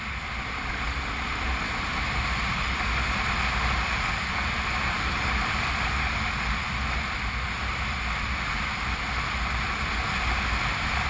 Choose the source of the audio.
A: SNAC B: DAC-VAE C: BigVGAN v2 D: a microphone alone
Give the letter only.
D